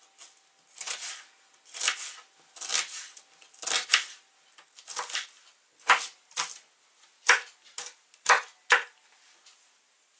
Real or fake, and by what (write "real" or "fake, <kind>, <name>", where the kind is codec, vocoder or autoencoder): real